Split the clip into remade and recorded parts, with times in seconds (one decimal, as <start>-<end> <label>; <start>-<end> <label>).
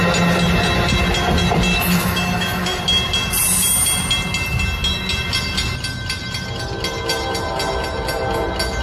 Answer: 0.0-1.7 recorded; 1.7-2.8 remade; 2.8-8.8 recorded